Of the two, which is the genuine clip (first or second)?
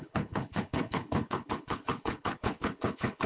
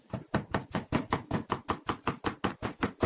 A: second